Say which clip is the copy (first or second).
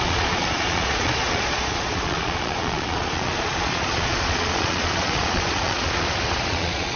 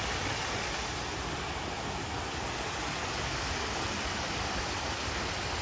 first